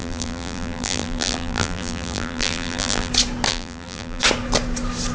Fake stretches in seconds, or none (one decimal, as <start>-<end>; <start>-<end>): 0.0-3.1; 3.5-4.2